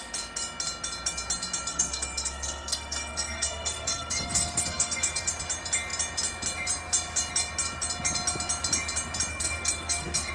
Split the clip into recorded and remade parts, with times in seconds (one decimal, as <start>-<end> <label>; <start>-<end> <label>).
0.0-1.7 recorded; 1.7-5.3 remade; 5.3-9.3 recorded; 9.3-10.3 remade